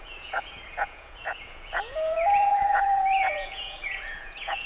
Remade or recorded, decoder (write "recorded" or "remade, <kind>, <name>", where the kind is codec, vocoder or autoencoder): remade, vocoder, Vocos